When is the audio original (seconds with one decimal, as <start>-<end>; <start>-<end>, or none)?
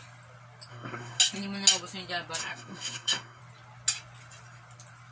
0.0-0.7; 1.2-2.4; 3.4-5.1